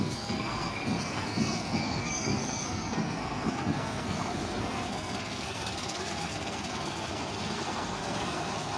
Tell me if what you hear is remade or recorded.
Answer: remade